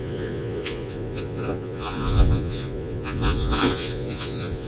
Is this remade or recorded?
remade